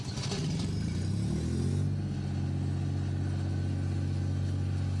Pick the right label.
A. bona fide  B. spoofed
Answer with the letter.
A